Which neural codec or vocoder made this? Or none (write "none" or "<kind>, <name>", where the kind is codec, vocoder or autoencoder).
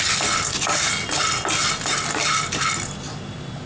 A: none